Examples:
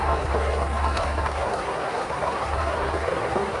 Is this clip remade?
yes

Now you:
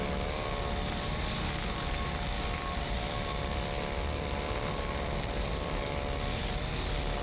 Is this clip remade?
no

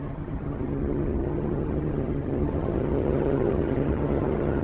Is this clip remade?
yes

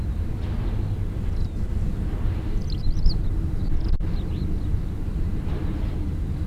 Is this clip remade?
no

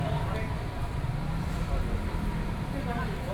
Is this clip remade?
no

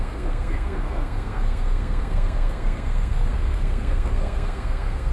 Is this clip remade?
yes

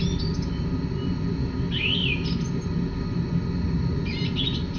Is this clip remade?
no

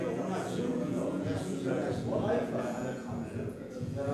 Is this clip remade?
yes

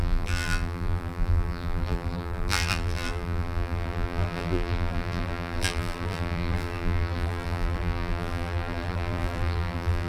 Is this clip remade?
yes